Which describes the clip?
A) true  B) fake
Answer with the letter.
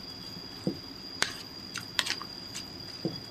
B